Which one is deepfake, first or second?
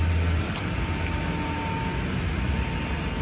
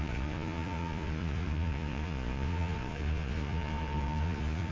second